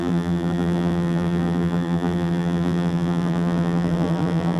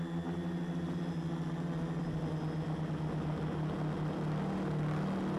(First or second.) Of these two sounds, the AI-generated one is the first